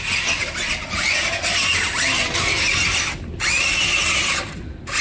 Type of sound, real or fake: real